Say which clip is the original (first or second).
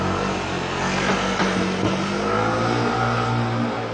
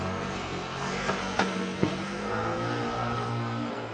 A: first